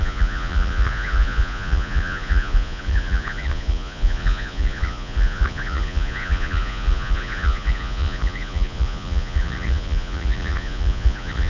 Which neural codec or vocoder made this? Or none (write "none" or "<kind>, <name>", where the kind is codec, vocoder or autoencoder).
vocoder, Vocos